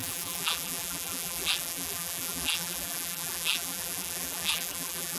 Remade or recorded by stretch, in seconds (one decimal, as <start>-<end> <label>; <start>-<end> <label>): 0.0-5.2 remade